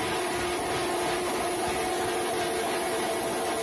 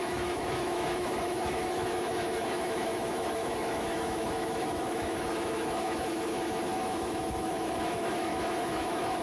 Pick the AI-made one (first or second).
second